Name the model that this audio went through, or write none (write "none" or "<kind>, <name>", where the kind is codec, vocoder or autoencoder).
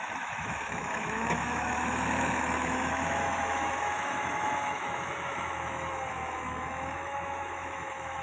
autoencoder, DAC-VAE